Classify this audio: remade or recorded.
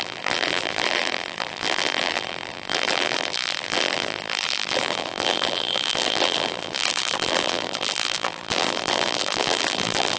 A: remade